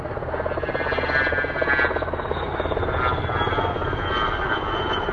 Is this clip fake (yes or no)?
no